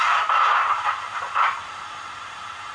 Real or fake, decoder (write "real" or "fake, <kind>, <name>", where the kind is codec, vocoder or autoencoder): fake, vocoder, BigVGAN v2